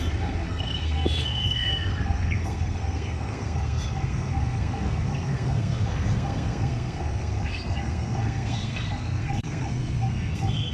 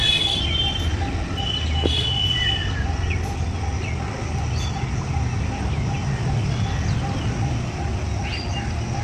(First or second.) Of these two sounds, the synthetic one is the first